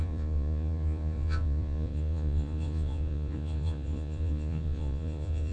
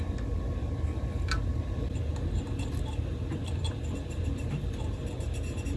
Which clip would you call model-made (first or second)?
first